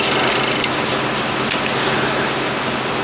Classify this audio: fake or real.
real